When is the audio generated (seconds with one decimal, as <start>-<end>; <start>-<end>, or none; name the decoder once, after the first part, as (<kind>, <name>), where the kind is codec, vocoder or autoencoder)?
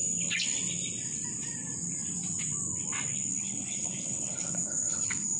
3.3-5.4 (codec, HILCodec)